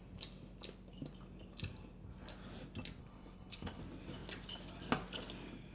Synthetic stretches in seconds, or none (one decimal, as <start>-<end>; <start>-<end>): 3.0-3.8